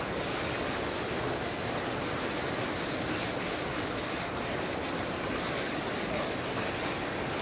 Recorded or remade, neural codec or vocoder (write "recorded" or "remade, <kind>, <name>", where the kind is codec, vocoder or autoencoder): recorded